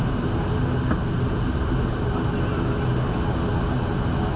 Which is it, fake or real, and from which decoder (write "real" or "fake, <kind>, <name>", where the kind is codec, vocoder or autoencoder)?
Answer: real